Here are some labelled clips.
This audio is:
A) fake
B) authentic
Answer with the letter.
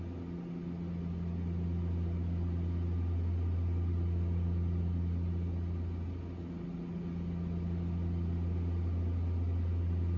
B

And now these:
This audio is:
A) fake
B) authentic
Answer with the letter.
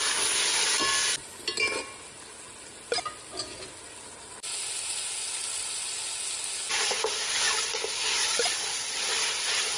B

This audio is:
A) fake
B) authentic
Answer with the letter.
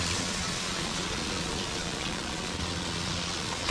A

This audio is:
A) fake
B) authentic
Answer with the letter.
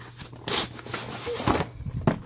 B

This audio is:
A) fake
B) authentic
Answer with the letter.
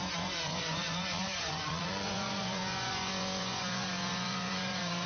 A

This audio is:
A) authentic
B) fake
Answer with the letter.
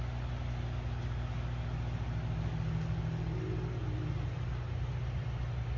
A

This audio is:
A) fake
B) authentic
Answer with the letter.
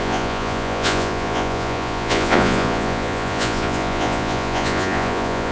A